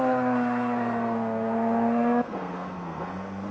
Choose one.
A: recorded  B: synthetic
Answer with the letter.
B